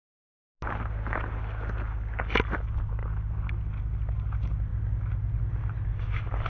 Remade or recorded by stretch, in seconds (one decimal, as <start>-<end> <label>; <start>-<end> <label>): 0.0-6.5 recorded